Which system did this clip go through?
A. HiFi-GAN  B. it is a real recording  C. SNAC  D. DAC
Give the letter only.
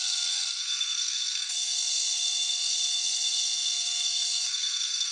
C